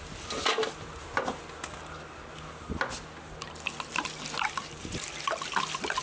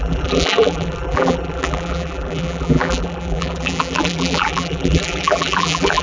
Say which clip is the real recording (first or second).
first